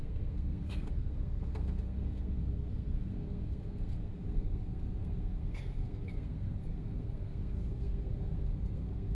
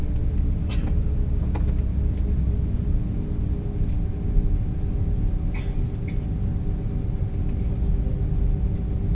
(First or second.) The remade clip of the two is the first